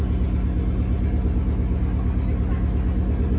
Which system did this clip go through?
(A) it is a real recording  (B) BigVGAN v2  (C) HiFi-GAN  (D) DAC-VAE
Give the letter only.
A